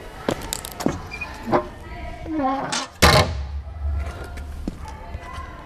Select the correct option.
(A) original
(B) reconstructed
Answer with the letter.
A